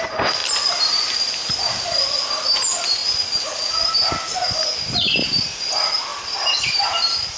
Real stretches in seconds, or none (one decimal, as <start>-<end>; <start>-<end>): 0.0-6.1